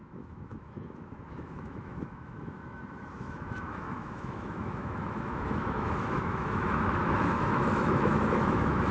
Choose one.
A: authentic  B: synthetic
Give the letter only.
B